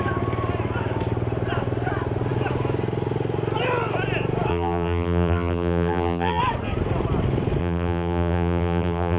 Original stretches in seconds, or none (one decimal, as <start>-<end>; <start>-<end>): 0.0-4.5; 6.4-7.6